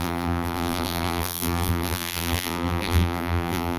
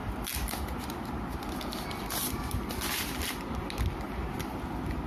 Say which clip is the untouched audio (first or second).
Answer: second